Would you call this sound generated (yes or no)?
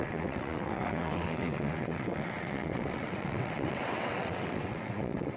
yes